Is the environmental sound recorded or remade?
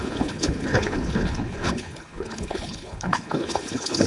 remade